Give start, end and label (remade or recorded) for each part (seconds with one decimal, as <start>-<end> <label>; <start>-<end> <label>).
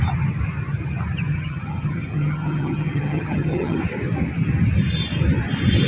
0.0-1.3 recorded; 1.3-3.8 remade; 3.8-5.9 recorded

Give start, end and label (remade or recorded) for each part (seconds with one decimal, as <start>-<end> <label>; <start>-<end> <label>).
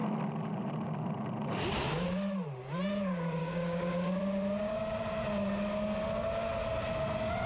0.0-3.4 recorded; 3.4-4.2 remade; 4.2-7.5 recorded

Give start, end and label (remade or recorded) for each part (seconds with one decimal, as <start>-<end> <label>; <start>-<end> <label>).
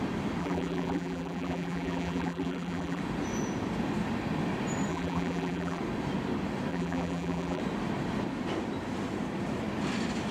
0.0-0.4 recorded; 0.4-3.0 remade; 3.0-4.9 recorded; 4.9-5.8 remade; 5.8-6.7 recorded; 6.7-7.6 remade; 7.6-10.3 recorded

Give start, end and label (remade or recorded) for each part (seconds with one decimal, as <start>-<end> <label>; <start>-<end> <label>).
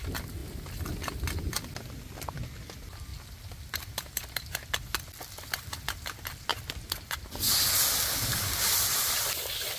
0.0-9.8 recorded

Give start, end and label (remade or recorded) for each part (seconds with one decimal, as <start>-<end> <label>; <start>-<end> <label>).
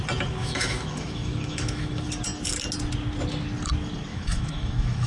0.0-0.4 recorded; 0.4-2.1 remade; 2.1-4.1 recorded; 4.1-5.1 remade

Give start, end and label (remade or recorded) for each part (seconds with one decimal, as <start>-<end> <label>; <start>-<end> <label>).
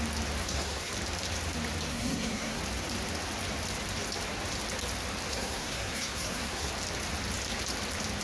0.0-0.4 recorded; 0.4-0.9 remade; 0.9-1.9 recorded; 1.9-2.6 remade; 2.6-5.3 recorded; 5.3-6.7 remade; 6.7-8.2 recorded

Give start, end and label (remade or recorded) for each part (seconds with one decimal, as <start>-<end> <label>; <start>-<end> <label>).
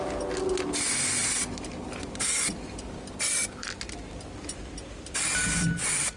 0.0-1.2 recorded; 1.2-3.8 remade; 3.8-6.2 recorded